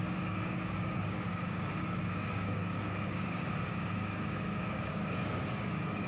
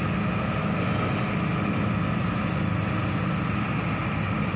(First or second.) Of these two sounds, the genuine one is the second